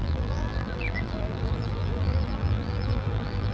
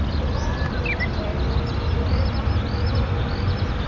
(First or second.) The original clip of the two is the second